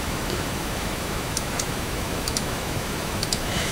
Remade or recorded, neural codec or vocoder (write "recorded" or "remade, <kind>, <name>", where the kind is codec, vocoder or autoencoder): remade, autoencoder, DAC-VAE